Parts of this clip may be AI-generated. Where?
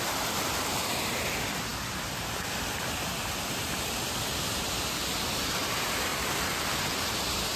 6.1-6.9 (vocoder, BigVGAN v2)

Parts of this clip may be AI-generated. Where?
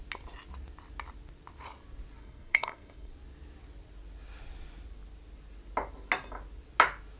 2.2-3.1 (codec, SNAC)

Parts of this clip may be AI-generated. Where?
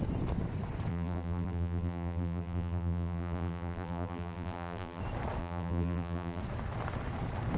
0.9-5.0 (vocoder, BigVGAN v2); 5.4-6.4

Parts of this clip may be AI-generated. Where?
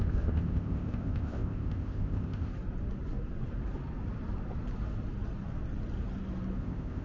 0.0-2.5 (codec, ZipCodec); 6.6-7.0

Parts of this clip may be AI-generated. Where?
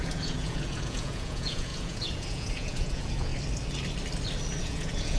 0.0-3.3 (vocoder, Vocos); 4.6-5.2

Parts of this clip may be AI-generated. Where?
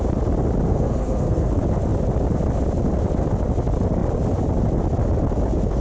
0.7-1.5 (codec, SNAC)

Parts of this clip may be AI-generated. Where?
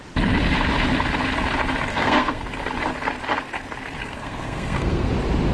1.9-2.4 (codec, SNAC); 4.0-5.1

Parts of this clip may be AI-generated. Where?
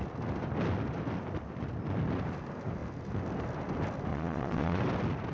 4.1-4.8 (vocoder, Vocos)